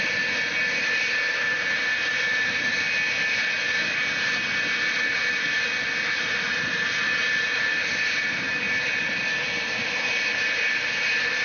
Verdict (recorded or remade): recorded